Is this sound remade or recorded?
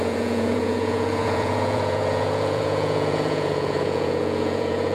remade